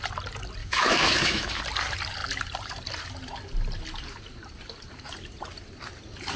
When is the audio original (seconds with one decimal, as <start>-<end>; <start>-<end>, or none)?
0.0-0.6; 1.6-6.4